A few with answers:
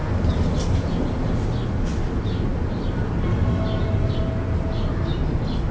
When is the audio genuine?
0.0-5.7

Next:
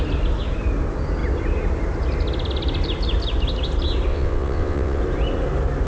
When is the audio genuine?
0.0-4.1; 5.0-5.9

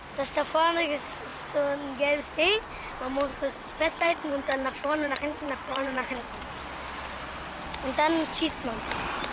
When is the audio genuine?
0.0-3.3; 6.3-8.3; 8.9-9.3

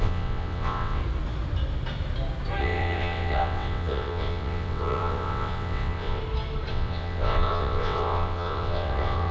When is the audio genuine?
1.0-2.6; 6.2-6.7